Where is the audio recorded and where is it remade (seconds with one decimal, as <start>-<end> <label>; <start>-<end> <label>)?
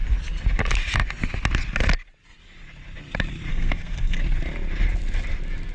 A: 0.0-3.5 recorded; 3.5-4.2 remade; 4.2-5.7 recorded